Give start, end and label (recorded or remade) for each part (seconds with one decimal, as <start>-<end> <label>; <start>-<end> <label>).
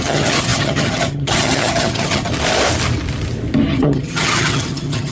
0.0-2.3 remade; 2.3-3.7 recorded; 3.7-5.1 remade